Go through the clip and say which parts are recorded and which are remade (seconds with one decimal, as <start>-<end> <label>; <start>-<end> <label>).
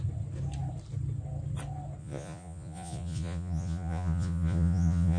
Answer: 0.0-2.0 recorded; 2.0-5.2 remade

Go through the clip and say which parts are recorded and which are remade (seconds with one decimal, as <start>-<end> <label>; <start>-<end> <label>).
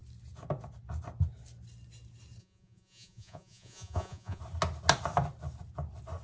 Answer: 0.0-2.4 recorded; 2.4-4.4 remade; 4.4-6.2 recorded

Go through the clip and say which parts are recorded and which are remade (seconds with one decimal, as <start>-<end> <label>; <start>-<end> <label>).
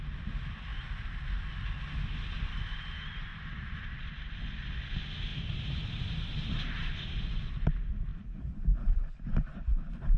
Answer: 0.0-3.3 recorded; 3.3-4.1 remade; 4.1-5.3 recorded; 5.3-6.9 remade; 6.9-8.1 recorded; 8.1-10.2 remade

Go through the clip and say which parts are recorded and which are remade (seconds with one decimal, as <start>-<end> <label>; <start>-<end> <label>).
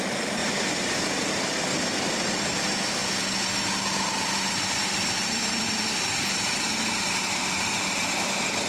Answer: 0.0-8.7 remade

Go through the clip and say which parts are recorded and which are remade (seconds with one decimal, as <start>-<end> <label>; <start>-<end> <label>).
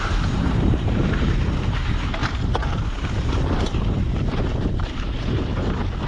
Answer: 0.0-6.1 remade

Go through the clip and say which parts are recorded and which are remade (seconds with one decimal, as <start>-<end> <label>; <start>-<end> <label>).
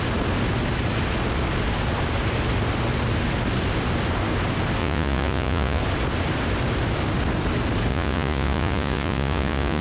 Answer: 0.0-4.8 recorded; 4.8-5.8 remade; 5.8-7.9 recorded; 7.9-9.8 remade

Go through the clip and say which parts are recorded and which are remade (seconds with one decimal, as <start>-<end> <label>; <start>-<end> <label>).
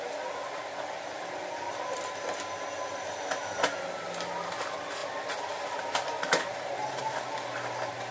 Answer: 0.0-8.1 recorded